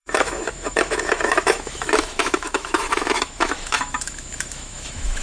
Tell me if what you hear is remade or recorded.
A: remade